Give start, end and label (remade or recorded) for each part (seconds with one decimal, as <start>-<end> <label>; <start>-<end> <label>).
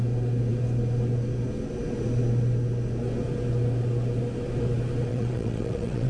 0.0-5.1 recorded; 5.1-6.1 remade